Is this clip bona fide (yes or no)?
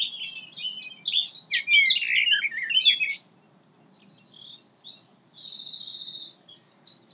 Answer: yes